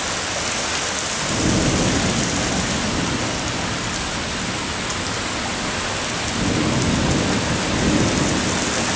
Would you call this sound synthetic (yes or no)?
no